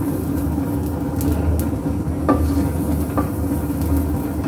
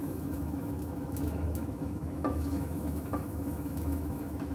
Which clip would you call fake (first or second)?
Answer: second